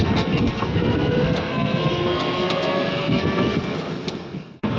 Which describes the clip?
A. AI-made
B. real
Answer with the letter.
A